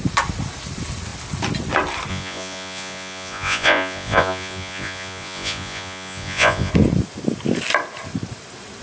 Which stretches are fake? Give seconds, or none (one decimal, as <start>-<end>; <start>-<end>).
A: 2.1-6.7